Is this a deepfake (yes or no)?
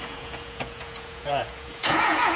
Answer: yes